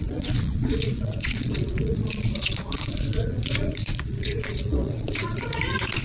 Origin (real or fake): fake